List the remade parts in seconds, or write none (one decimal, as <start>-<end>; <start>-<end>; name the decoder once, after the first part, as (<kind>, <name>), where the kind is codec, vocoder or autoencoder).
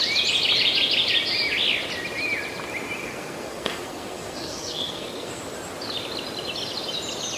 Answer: 3.0-5.4 (codec, SNAC)